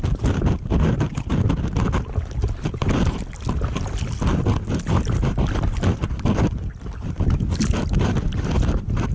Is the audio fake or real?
real